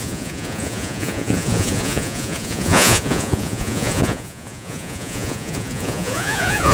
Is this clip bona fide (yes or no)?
no